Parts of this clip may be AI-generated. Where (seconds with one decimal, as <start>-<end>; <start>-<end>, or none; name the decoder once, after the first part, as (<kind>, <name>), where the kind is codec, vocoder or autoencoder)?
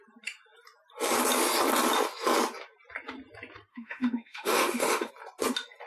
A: 3.7-5.1 (autoencoder, DAC-VAE)